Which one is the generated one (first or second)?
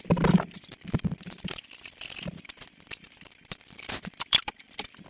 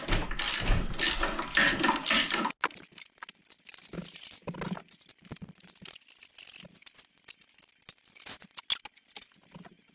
first